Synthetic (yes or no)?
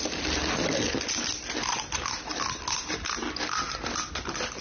no